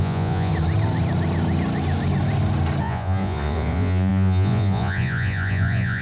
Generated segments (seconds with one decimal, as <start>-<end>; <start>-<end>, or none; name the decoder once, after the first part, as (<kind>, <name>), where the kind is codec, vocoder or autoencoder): 0.0-0.5 (vocoder, Vocos); 2.8-6.0